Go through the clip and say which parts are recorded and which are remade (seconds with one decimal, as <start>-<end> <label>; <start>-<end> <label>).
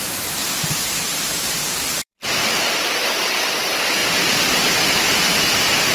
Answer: 0.0-0.4 recorded; 0.4-2.3 remade; 2.3-5.9 recorded